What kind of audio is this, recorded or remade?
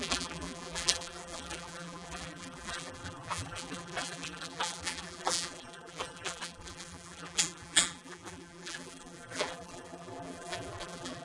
remade